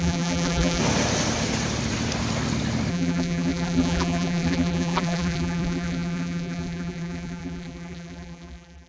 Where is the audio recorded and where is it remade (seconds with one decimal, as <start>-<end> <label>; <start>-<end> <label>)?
0.0-0.8 remade; 0.8-2.9 recorded; 2.9-8.9 remade